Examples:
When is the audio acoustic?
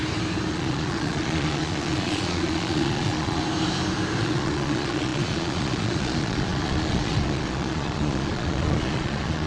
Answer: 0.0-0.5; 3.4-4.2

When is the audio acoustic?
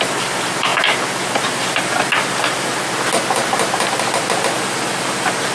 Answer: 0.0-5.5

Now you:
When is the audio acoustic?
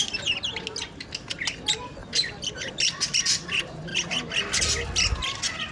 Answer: 0.0-2.0; 2.7-3.9; 4.6-5.7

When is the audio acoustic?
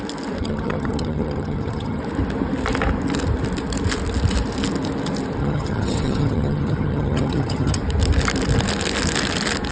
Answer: 0.0-0.4; 2.0-5.4; 7.8-9.7